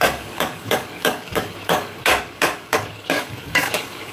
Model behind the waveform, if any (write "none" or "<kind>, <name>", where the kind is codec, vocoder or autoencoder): codec, DAC